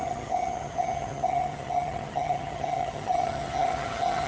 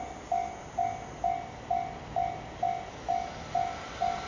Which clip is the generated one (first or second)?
first